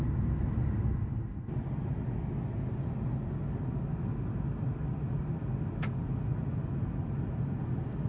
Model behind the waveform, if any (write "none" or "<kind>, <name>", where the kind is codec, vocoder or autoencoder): none